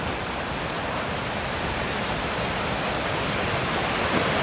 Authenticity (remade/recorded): recorded